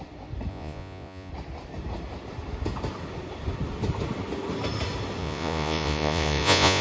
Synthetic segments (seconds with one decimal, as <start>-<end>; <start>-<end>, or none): 0.5-1.3; 5.2-6.8